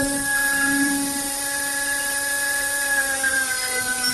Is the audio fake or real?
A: fake